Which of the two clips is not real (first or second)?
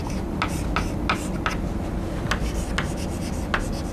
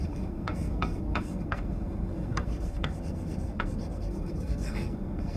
second